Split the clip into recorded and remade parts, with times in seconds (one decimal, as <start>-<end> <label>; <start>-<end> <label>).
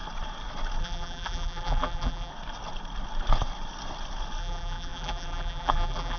0.0-0.8 recorded; 0.8-2.3 remade; 2.3-4.4 recorded; 4.4-6.2 remade